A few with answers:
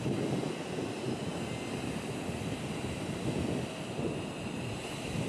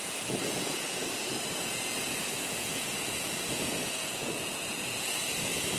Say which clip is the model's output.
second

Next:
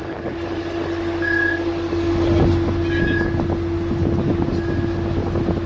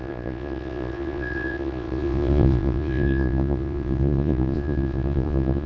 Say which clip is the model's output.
second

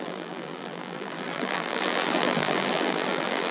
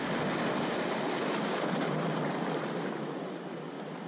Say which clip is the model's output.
first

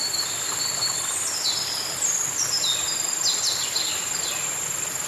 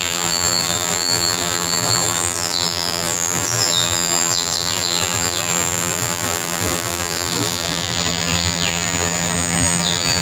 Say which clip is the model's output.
second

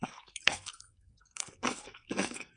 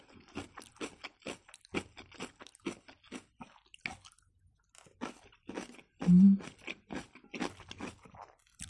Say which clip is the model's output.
first